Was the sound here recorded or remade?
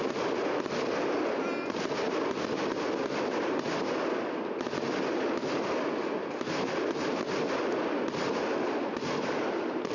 recorded